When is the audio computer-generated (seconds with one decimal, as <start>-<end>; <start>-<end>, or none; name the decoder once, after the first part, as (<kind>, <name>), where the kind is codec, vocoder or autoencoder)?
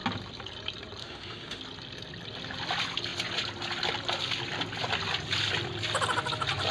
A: 1.0-1.6 (autoencoder, DAC-VAE)